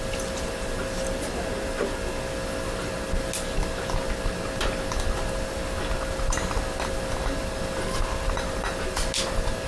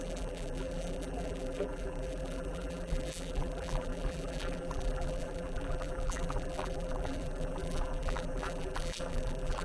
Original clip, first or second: first